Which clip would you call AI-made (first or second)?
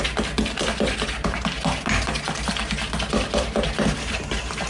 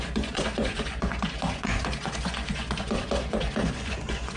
second